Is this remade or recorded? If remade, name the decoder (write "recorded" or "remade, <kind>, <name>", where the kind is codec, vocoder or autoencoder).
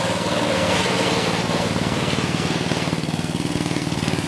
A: remade, codec, SNAC